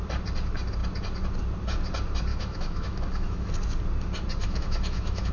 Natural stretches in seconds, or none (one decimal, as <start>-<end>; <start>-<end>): 0.0-2.3; 3.5-4.4